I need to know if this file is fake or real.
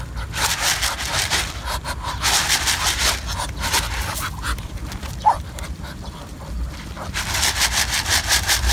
fake